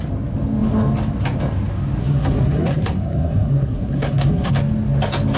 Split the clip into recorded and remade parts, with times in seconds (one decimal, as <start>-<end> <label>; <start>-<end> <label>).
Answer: 0.0-2.0 recorded; 2.0-4.5 remade; 4.5-5.4 recorded